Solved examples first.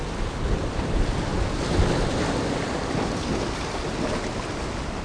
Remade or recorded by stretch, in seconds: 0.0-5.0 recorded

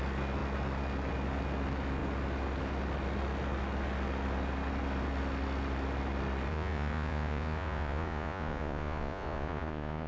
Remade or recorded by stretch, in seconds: 0.0-6.5 recorded; 6.5-10.1 remade

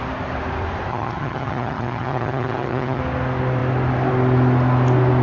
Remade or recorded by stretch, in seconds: 0.0-0.9 recorded; 0.9-3.0 remade; 3.0-5.2 recorded

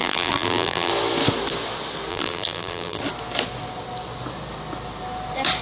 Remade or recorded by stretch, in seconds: 0.0-0.9 remade; 0.9-2.1 recorded; 2.1-3.0 remade; 3.0-5.6 recorded

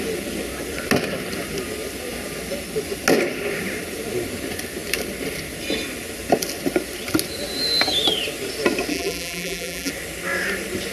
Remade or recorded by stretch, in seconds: 0.0-8.9 recorded; 8.9-9.9 remade; 9.9-10.9 recorded